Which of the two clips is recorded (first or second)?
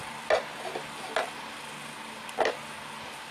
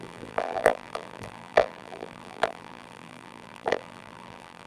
first